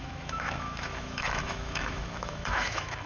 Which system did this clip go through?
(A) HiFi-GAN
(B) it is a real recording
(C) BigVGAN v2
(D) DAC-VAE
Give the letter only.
D